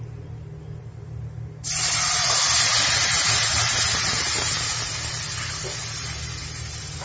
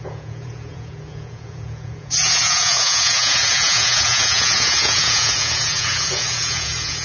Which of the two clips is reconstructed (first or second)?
second